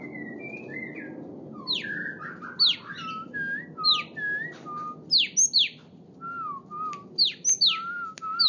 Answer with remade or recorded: recorded